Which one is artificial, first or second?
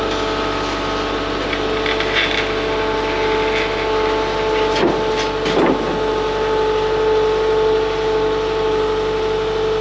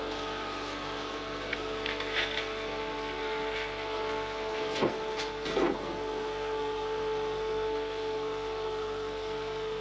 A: second